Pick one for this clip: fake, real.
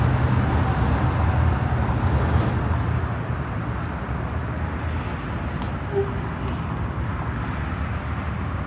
real